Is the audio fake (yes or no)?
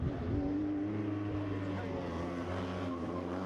no